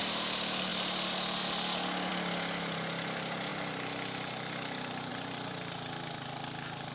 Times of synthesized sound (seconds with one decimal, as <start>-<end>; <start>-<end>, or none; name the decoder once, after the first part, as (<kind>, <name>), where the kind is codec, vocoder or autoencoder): none

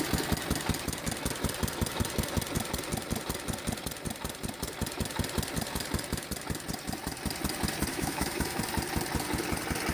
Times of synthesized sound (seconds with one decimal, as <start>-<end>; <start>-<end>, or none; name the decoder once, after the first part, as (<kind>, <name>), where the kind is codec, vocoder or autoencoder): 7.9-8.6 (autoencoder, DAC-VAE)

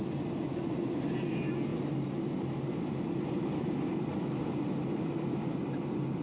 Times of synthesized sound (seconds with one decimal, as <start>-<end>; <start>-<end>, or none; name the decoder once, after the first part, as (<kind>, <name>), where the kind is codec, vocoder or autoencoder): none

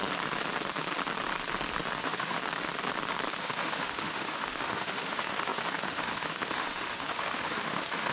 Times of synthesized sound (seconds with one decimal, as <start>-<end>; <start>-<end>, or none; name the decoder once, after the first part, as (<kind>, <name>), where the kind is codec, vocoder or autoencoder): 2.0-2.4 (autoencoder, DAC-VAE); 3.4-8.1

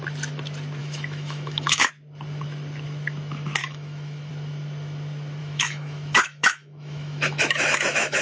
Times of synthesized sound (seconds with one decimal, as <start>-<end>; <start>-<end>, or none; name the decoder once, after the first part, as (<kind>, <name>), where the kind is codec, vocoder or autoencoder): 0.8-1.9 (autoencoder, DAC-VAE); 3.6-4.3; 5.4-8.2